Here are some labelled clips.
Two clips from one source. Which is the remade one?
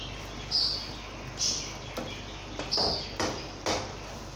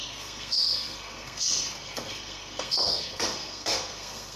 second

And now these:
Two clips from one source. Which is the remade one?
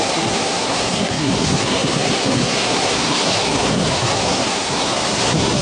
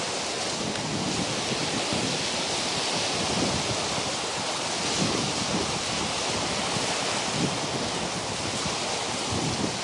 first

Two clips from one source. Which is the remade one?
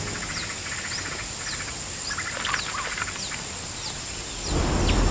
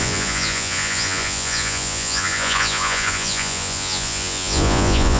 second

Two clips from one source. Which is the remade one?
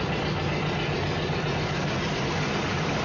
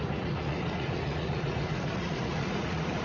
second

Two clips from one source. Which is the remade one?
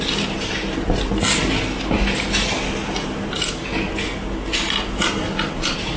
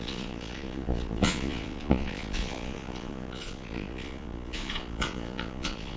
second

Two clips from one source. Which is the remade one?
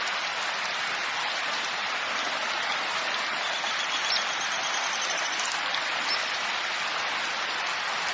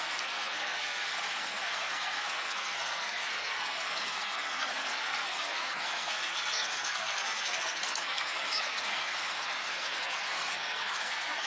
second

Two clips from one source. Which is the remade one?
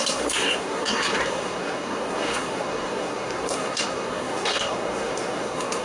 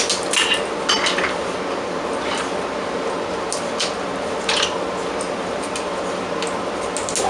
first